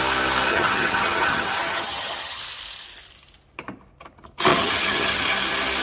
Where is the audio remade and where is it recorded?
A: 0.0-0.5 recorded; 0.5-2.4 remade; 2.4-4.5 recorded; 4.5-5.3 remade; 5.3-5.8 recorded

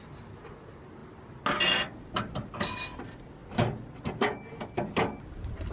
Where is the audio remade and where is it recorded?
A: 0.0-5.7 recorded

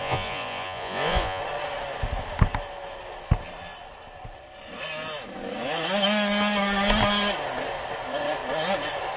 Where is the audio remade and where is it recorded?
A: 0.0-1.4 remade; 1.4-9.2 recorded

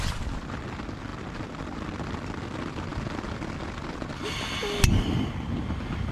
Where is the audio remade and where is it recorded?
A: 0.0-6.1 recorded